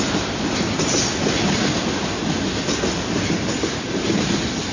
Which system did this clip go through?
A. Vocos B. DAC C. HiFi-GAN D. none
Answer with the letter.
D